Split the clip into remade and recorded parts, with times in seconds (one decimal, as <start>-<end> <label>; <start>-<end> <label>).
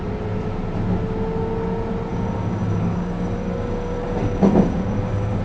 0.0-2.1 recorded; 2.1-5.4 remade